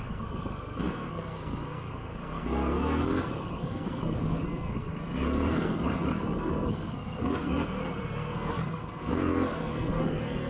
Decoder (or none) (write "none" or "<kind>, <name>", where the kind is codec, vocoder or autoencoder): codec, SNAC